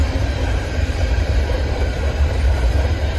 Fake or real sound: fake